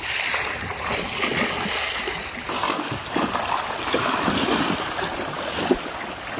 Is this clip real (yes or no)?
yes